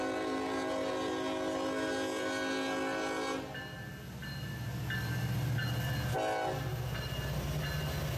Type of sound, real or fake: real